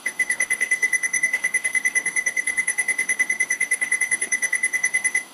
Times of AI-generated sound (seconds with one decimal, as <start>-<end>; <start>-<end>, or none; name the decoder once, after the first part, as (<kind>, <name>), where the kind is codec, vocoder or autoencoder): 0.0-5.3 (codec, DAC)